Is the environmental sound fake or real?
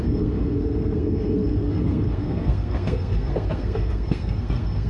fake